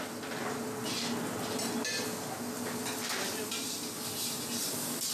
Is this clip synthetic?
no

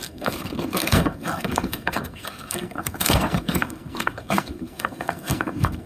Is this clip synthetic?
yes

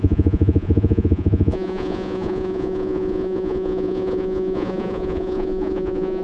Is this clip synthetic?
yes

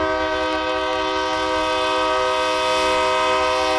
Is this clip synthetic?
no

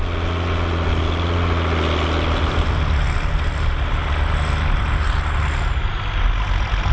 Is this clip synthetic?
no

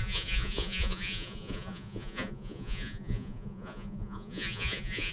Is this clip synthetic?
yes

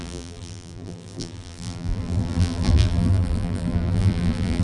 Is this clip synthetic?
yes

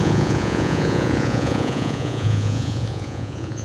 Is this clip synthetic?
yes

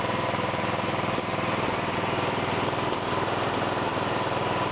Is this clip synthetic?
yes